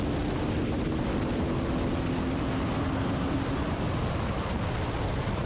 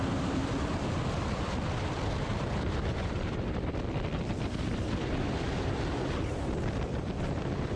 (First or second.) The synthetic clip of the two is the second